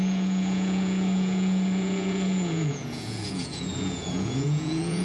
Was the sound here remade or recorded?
remade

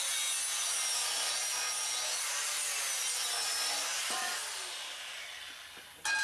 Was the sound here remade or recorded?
recorded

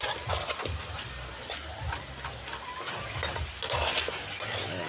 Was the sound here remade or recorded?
recorded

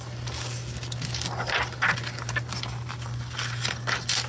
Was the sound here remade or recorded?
recorded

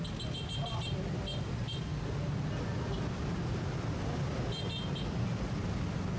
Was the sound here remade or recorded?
recorded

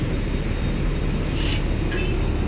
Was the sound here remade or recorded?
recorded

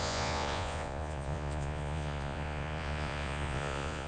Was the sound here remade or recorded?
remade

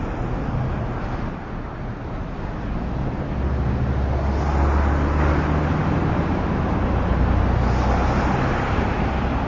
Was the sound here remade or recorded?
recorded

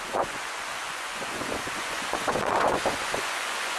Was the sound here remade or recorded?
remade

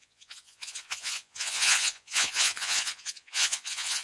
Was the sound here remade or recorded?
remade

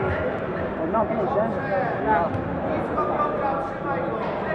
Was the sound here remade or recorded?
recorded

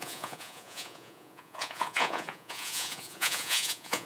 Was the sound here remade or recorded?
remade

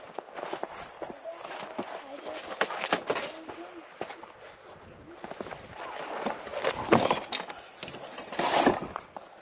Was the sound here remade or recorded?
recorded